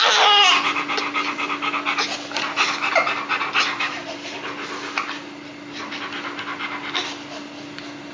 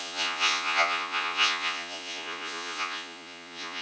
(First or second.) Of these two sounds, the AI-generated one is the second